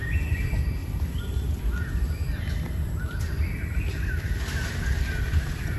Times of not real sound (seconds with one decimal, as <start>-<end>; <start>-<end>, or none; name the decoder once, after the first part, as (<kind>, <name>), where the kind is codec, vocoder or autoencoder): none